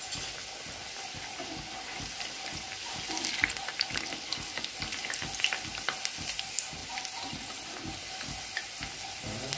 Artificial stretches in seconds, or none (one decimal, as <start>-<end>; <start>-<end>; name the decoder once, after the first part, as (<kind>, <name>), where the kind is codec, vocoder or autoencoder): none